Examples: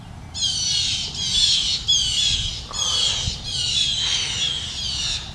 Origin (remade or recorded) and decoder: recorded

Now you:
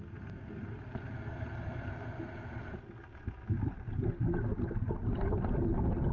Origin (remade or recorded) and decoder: recorded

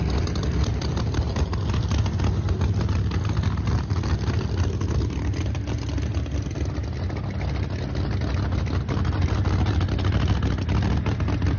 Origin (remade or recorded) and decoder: recorded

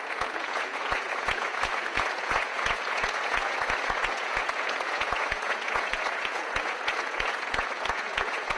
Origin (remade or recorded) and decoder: remade, vocoder, Vocos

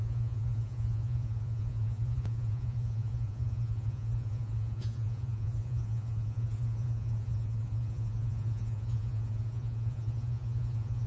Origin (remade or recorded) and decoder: remade, vocoder, Vocos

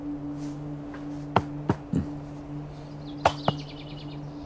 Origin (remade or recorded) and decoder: recorded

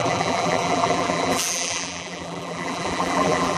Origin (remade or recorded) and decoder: remade, vocoder, BigVGAN v2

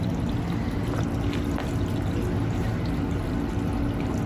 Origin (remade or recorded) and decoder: recorded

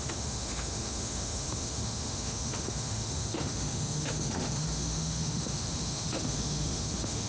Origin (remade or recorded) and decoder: remade, autoencoder, DAC-VAE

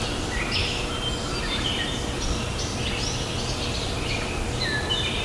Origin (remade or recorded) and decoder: recorded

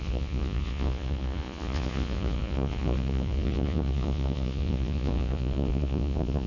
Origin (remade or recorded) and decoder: remade, vocoder, Vocos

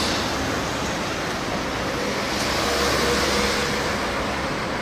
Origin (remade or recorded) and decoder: recorded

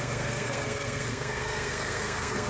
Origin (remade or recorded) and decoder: remade, codec, SNAC